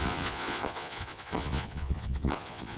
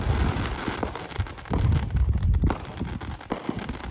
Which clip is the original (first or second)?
second